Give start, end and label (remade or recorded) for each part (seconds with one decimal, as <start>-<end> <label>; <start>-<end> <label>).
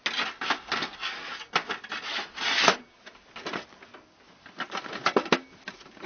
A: 0.0-6.1 recorded